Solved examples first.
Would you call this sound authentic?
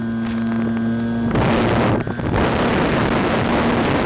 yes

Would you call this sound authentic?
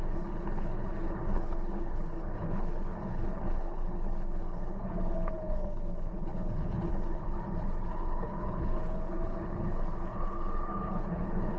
no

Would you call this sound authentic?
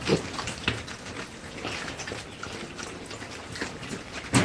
yes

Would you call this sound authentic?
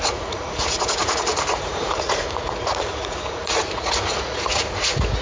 no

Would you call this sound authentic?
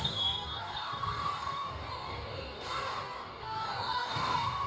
no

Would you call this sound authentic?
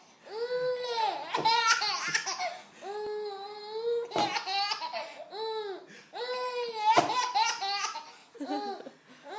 yes